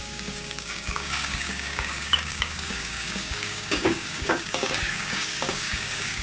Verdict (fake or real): fake